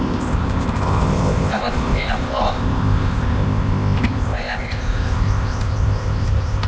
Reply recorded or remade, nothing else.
remade